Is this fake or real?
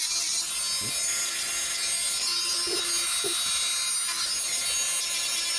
real